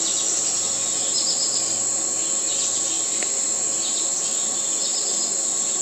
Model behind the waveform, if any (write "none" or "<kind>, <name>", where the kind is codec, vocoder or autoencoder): none